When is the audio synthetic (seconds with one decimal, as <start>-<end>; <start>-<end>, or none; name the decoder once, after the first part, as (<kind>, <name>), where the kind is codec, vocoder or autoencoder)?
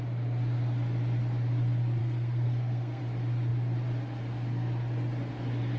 2.0-3.0 (codec, SNAC)